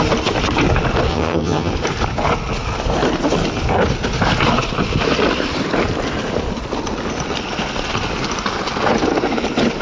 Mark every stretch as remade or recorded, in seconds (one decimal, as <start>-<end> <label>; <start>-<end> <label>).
0.0-1.1 recorded; 1.1-1.7 remade; 1.7-9.8 recorded